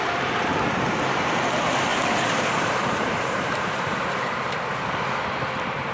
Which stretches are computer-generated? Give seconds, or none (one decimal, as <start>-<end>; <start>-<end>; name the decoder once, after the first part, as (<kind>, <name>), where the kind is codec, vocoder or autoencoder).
0.0-5.9 (vocoder, BigVGAN v2)